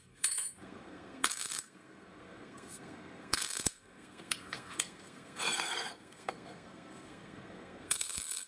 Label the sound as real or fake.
fake